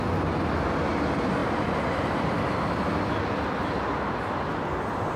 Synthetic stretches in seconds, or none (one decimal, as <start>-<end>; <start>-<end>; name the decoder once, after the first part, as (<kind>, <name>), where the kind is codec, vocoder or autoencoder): 1.4-2.5 (vocoder, BigVGAN v2)